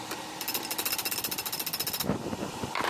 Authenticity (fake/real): real